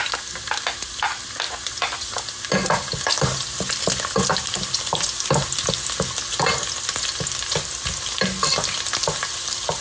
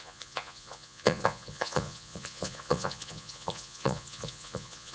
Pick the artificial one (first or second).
second